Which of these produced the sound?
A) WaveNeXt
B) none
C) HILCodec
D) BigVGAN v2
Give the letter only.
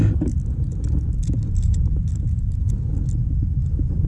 B